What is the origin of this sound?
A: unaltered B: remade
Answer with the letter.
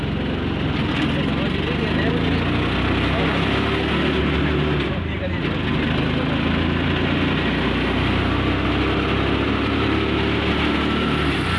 A